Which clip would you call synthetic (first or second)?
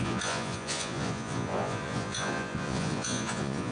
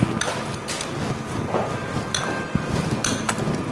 first